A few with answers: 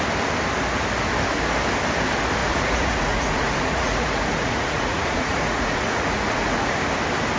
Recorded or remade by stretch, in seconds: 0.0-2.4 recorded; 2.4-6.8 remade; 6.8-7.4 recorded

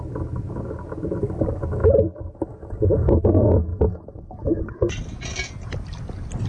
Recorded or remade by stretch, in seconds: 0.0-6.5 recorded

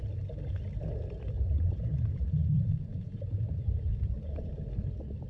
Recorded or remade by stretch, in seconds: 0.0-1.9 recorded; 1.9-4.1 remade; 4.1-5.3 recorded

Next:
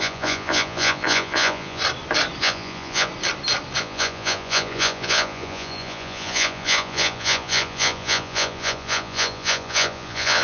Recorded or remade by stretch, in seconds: 0.0-1.8 remade; 1.8-2.4 recorded; 2.4-3.1 remade; 3.1-3.8 recorded; 3.8-10.4 remade

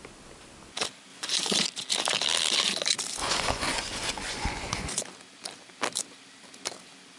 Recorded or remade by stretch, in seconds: 0.0-1.1 recorded; 1.1-1.6 remade; 1.6-3.2 recorded; 3.2-5.0 remade; 5.0-7.2 recorded

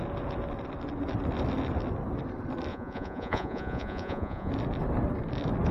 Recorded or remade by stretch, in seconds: 0.0-2.7 recorded; 2.7-4.5 remade; 4.5-5.7 recorded

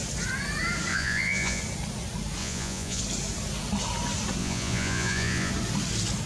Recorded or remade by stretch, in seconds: 0.0-0.9 recorded; 0.9-1.6 remade; 1.6-2.4 recorded; 2.4-3.0 remade; 3.0-4.4 recorded; 4.4-5.5 remade; 5.5-6.3 recorded